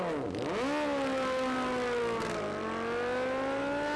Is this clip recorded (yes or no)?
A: yes